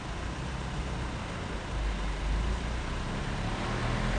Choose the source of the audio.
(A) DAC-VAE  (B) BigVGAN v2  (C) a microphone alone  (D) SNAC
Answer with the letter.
C